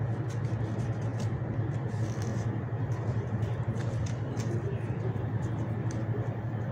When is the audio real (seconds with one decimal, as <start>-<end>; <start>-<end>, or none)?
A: 0.0-1.1; 1.9-2.3; 6.0-6.7